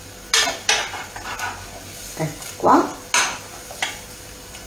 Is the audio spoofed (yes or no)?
no